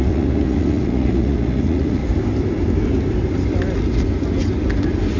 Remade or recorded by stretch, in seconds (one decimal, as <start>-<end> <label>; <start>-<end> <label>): 0.0-2.0 remade; 2.0-5.2 recorded